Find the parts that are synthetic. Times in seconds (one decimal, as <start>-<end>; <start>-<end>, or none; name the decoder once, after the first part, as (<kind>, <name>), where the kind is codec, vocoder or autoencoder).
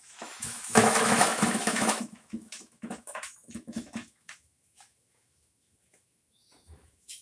0.0-7.2 (autoencoder, DAC-VAE)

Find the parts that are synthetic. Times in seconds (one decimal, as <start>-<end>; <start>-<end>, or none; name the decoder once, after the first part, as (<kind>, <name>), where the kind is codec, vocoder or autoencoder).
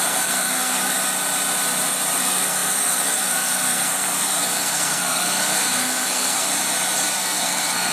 0.0-1.0 (codec, SNAC); 2.2-6.5; 7.1-7.9